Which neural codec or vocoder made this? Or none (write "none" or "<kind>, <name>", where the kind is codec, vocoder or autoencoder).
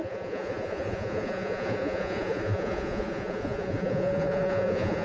vocoder, Vocos